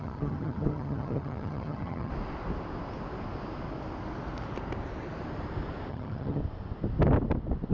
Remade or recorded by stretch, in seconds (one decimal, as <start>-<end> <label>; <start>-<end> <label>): 0.0-2.1 remade; 2.1-5.9 recorded; 5.9-6.4 remade; 6.4-7.7 recorded